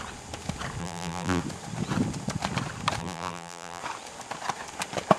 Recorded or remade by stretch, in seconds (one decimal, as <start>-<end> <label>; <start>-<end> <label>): 0.0-0.8 recorded; 0.8-1.4 remade; 1.4-3.0 recorded; 3.0-3.8 remade; 3.8-5.2 recorded